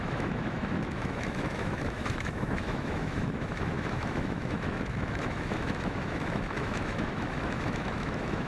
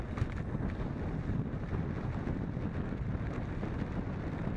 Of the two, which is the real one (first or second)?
second